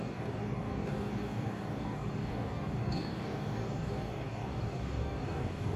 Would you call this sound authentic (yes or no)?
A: no